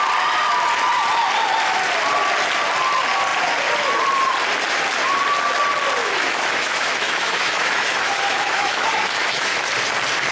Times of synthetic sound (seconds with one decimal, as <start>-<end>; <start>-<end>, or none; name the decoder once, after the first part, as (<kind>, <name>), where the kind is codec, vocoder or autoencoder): 6.0-9.7 (autoencoder, DAC-VAE)